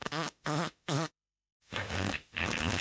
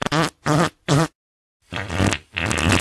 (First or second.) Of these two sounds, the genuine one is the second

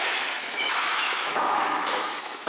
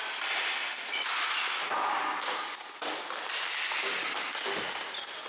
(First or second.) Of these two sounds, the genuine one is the second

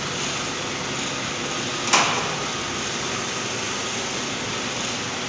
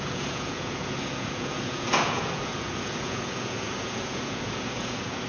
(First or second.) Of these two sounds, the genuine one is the first